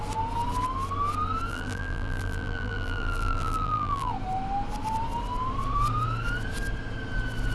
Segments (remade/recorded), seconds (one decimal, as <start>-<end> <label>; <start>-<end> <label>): 0.0-1.5 recorded; 1.5-4.1 remade; 4.1-7.5 recorded